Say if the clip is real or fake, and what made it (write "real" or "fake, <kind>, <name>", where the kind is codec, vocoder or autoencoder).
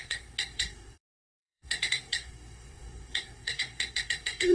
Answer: fake, codec, SNAC